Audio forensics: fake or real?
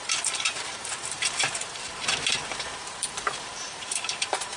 fake